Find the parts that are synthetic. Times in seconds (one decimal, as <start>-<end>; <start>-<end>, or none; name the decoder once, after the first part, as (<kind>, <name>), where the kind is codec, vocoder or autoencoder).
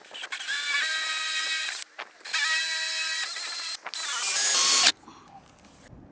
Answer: none